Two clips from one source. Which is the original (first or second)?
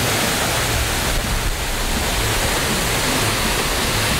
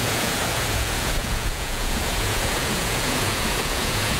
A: first